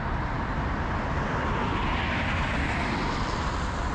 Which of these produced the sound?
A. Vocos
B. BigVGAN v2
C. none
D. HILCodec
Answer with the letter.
C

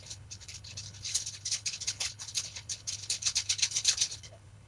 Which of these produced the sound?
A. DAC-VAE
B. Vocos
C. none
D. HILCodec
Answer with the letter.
D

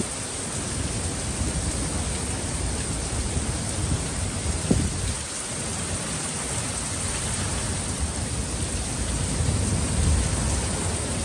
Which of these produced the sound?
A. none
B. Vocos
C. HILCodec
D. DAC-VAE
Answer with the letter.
A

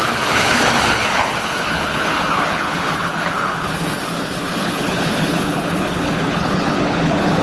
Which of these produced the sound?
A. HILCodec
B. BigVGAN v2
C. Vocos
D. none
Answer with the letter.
A